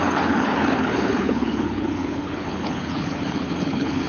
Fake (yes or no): yes